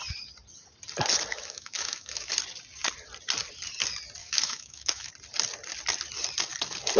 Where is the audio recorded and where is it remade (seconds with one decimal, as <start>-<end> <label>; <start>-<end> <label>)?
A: 0.0-1.3 recorded; 1.3-2.3 remade; 2.3-4.2 recorded; 4.2-5.1 remade; 5.1-7.0 recorded